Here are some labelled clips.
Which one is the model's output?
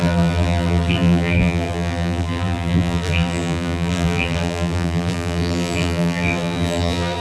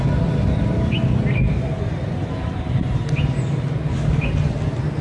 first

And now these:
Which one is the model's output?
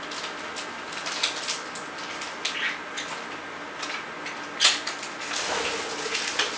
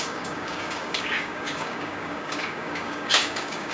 second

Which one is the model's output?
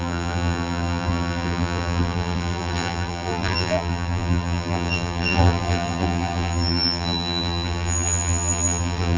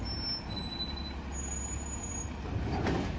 first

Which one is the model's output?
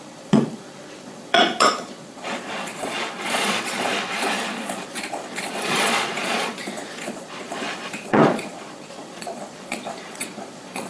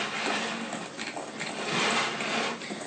first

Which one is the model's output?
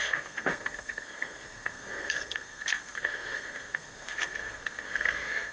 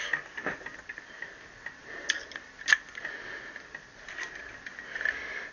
first